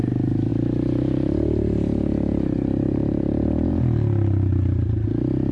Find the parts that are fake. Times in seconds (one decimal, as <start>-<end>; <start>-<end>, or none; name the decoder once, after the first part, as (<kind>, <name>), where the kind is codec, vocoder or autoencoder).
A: 0.5-3.8 (vocoder, BigVGAN v2)